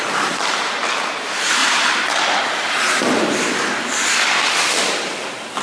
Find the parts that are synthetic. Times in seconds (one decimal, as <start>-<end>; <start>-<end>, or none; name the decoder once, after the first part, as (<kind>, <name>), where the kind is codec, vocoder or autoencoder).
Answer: none